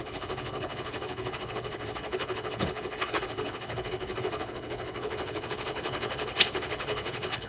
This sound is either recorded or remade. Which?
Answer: remade